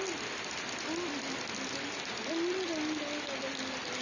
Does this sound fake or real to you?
real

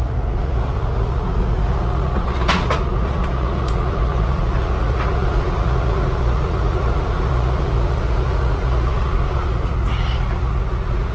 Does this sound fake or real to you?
fake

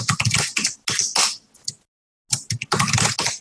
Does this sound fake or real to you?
real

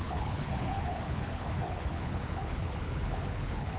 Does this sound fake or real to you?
fake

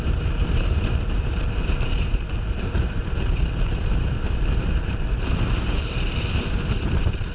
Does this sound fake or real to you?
fake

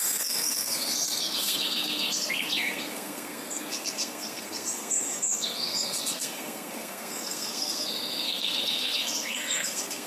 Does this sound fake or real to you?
fake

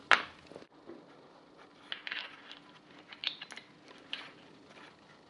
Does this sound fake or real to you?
real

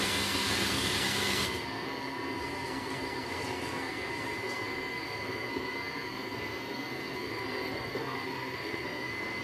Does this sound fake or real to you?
fake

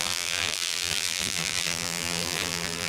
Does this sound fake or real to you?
fake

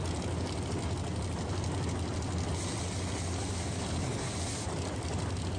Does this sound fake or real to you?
real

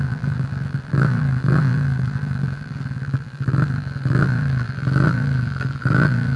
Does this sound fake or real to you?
fake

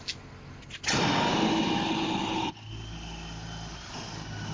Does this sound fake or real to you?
real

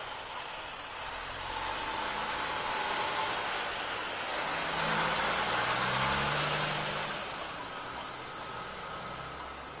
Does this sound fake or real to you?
real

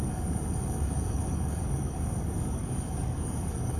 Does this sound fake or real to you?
fake